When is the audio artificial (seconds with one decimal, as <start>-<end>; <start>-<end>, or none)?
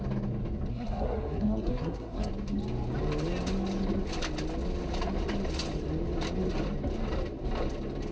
0.7-2.3